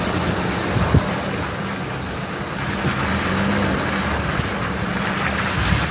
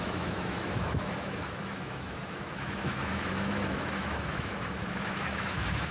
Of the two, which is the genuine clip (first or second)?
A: first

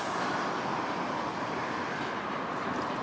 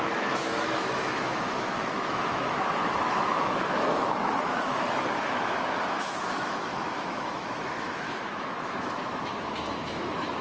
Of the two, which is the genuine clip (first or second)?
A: first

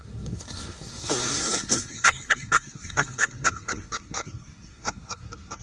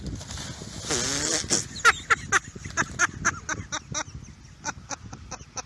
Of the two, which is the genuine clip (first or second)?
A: second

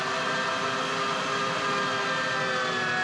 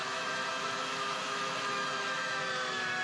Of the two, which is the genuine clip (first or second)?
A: first